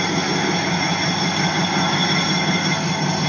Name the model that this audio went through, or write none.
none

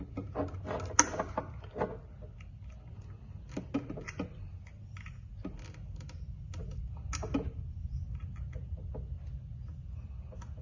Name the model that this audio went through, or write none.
none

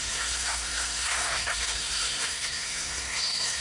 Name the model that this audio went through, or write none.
codec, SNAC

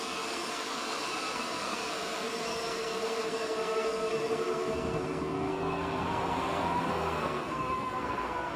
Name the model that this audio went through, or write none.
codec, SNAC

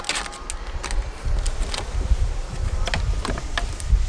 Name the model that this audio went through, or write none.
none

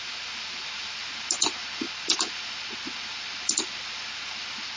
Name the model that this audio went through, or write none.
none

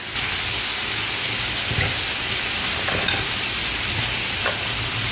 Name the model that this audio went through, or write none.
none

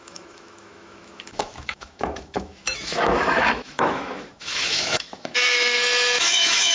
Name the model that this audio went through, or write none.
autoencoder, DAC-VAE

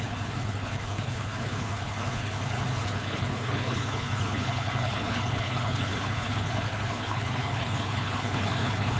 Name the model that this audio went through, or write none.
codec, HILCodec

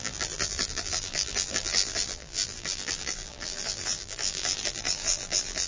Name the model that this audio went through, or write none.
vocoder, BigVGAN v2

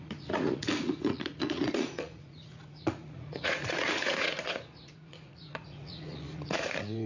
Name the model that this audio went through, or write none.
vocoder, Vocos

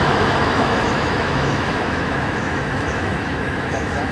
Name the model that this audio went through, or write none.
autoencoder, DAC-VAE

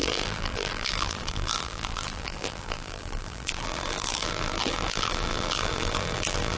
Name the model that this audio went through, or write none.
vocoder, BigVGAN v2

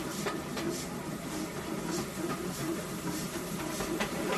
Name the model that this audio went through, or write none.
none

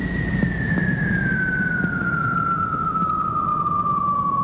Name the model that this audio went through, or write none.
none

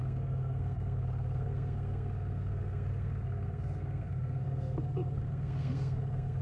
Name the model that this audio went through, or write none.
codec, SNAC